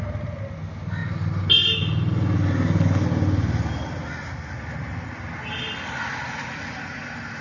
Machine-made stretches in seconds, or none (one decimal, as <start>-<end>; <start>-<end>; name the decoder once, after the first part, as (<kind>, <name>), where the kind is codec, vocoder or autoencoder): none